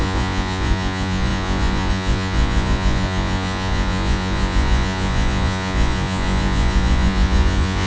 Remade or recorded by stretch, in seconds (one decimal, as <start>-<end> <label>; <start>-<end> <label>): 0.0-7.9 remade

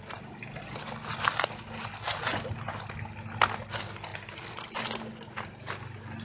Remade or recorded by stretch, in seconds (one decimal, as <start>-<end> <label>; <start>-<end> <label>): 0.0-6.2 recorded

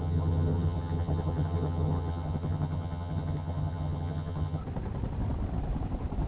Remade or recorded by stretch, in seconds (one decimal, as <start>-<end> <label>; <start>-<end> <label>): 0.0-4.6 remade; 4.6-6.3 recorded